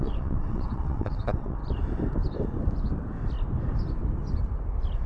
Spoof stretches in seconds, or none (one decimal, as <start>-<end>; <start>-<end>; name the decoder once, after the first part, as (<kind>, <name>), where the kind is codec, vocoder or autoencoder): 0.0-1.6 (vocoder, WaveNeXt)